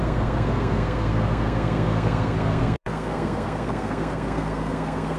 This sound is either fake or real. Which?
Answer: fake